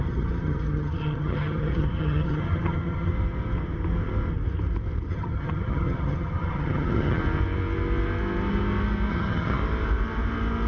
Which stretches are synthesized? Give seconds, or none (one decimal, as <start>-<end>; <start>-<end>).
0.0-3.1; 5.1-7.2; 9.1-9.6